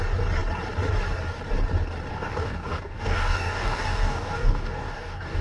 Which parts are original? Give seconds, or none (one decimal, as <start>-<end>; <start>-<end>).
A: 0.0-2.1